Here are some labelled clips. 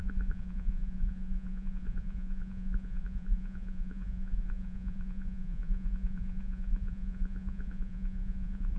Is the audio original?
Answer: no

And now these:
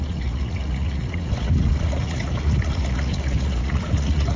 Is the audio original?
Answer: no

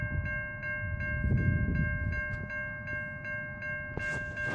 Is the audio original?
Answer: yes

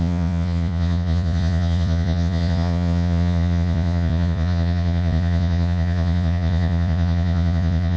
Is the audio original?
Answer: no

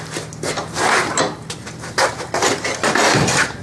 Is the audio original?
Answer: yes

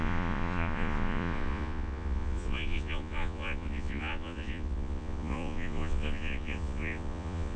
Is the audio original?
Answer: no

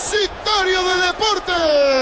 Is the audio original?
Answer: no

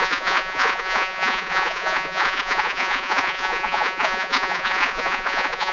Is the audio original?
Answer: no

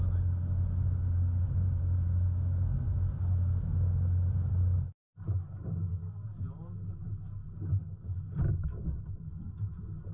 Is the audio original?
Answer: yes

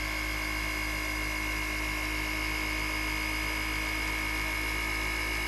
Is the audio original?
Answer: yes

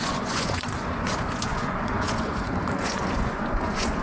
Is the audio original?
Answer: no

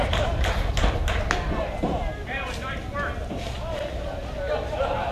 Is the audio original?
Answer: yes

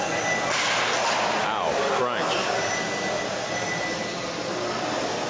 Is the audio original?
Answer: yes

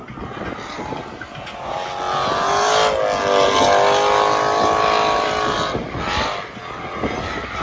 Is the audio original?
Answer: yes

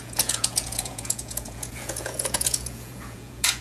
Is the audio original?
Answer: no